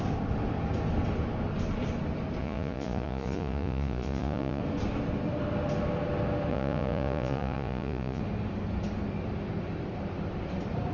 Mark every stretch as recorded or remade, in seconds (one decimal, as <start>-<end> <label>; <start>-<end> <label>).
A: 0.0-2.4 recorded; 2.4-4.6 remade; 4.6-6.5 recorded; 6.5-8.2 remade; 8.2-10.9 recorded